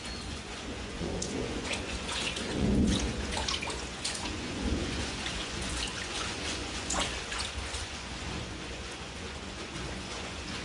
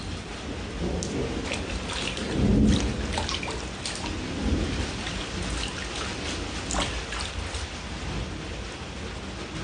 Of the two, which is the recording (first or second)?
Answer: second